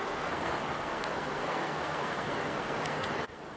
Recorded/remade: remade